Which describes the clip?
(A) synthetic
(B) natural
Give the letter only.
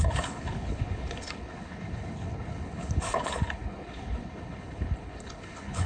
A